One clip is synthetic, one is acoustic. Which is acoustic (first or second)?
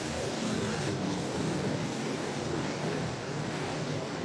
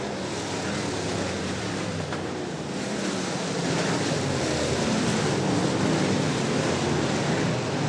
second